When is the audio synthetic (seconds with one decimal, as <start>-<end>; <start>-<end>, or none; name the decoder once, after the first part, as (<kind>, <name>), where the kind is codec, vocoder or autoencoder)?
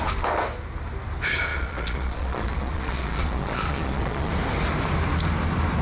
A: 1.5-4.3 (vocoder, Vocos)